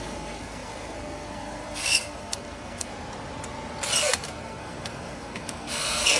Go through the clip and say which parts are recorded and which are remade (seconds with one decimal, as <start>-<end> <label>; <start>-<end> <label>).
0.0-2.9 remade; 2.9-4.0 recorded; 4.0-6.2 remade